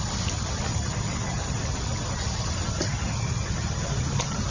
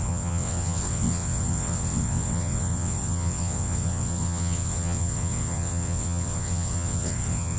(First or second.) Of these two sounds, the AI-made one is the second